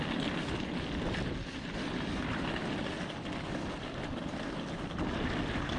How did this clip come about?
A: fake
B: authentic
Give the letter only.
B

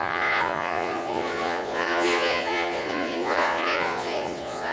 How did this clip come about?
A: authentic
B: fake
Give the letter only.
B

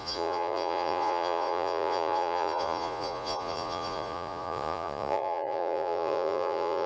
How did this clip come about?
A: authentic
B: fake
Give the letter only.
B